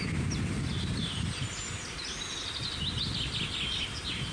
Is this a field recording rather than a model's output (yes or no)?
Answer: yes